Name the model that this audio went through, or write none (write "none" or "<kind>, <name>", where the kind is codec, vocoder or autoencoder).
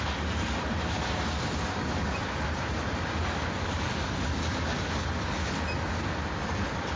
none